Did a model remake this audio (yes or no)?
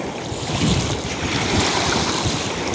no